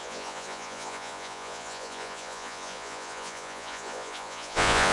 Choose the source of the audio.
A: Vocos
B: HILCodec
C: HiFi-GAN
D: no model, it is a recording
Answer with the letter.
A